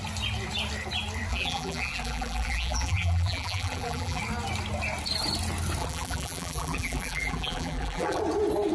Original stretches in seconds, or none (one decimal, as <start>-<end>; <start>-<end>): 0.0-1.3; 4.2-5.8; 8.2-8.7